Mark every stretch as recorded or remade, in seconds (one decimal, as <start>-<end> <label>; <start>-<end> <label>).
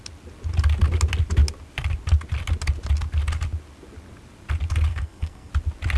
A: 0.0-4.9 recorded; 4.9-5.5 remade; 5.5-6.0 recorded